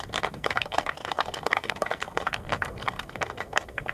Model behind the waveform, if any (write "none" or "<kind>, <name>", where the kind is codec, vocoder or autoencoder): codec, SNAC